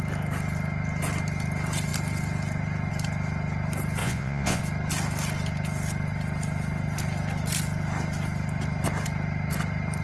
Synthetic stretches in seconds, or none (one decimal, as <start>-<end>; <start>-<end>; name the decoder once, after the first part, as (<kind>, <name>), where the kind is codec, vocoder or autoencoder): 4.0-4.6 (vocoder, Vocos)